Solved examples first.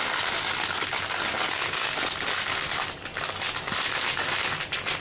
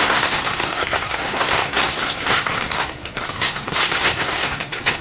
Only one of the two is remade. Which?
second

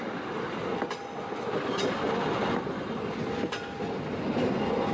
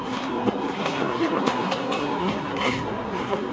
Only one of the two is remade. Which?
second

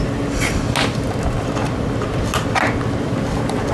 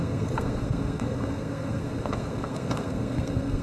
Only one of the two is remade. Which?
second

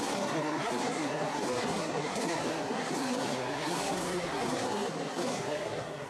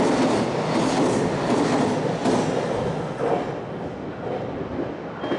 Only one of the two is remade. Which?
first